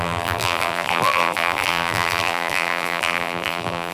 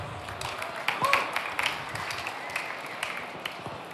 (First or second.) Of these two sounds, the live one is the second